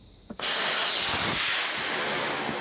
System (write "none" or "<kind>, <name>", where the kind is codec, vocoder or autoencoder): none